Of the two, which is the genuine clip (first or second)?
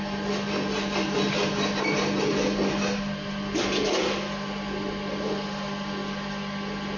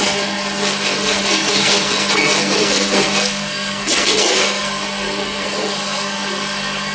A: first